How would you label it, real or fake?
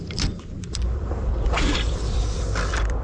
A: fake